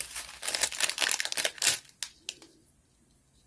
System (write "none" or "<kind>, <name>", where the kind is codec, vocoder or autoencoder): none